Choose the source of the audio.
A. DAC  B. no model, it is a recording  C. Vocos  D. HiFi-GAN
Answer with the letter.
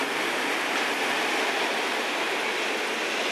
B